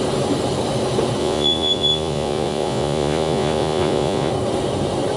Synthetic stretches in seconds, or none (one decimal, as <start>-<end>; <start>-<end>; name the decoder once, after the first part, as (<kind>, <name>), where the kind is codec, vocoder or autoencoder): 1.2-4.3 (vocoder, Vocos)